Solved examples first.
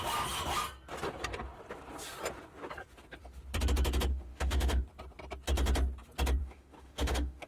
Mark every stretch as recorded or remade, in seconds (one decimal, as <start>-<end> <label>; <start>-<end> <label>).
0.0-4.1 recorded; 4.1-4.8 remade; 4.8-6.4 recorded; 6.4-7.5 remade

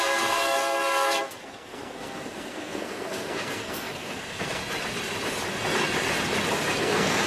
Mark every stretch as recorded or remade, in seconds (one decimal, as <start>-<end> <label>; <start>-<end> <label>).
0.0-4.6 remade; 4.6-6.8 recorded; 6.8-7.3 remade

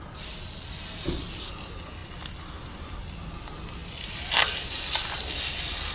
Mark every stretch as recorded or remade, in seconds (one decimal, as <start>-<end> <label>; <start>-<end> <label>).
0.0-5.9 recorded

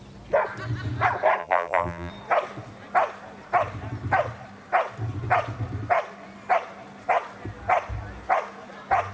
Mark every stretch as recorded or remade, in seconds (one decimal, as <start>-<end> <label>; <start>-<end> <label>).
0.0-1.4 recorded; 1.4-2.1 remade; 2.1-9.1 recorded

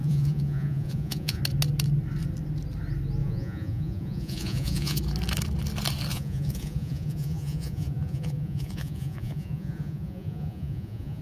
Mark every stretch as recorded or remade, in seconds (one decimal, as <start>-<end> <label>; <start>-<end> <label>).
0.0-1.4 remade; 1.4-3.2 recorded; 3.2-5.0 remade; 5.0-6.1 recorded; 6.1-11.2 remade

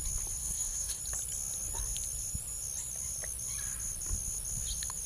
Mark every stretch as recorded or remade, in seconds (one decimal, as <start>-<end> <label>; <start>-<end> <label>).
0.0-0.4 recorded; 0.4-1.0 remade; 1.0-5.1 recorded

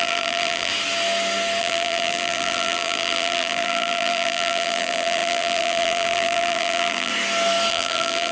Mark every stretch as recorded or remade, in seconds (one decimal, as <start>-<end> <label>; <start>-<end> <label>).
0.0-0.7 remade; 0.7-1.6 recorded; 1.6-7.1 remade; 7.1-7.7 recorded; 7.7-8.3 remade

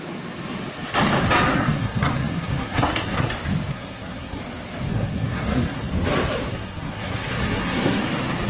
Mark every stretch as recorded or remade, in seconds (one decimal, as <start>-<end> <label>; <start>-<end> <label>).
0.0-1.5 recorded; 1.5-3.3 remade; 3.3-3.7 recorded; 3.7-4.4 remade; 4.4-4.9 recorded; 4.9-5.9 remade; 5.9-6.5 recorded; 6.5-8.0 remade; 8.0-8.5 recorded